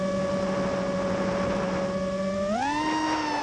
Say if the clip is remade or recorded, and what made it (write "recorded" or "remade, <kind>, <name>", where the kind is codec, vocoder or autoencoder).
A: recorded